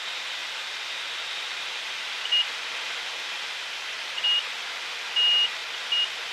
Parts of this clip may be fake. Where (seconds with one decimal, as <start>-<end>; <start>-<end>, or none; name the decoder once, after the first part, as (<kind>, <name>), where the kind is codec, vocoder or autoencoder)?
none